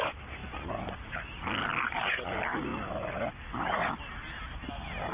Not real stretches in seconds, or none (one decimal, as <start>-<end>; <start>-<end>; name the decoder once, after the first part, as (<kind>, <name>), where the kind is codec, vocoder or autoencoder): none